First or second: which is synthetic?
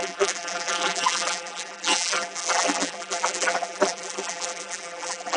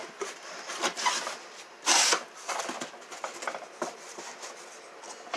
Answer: first